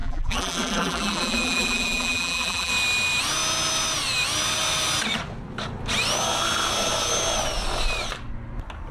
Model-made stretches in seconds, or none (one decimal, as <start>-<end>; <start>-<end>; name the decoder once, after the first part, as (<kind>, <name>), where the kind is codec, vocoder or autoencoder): 0.0-2.7 (vocoder, BigVGAN v2)